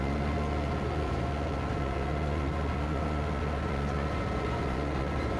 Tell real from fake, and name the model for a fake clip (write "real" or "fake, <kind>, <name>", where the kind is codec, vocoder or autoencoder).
fake, vocoder, Vocos